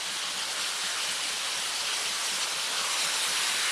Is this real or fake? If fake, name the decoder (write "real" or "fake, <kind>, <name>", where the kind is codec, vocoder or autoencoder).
real